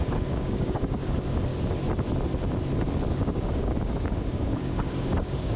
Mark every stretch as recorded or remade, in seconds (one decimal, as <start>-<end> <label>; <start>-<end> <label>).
0.0-1.5 remade; 1.5-3.1 recorded; 3.1-5.6 remade